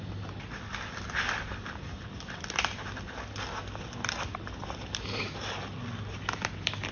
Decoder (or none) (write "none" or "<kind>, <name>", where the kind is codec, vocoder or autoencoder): none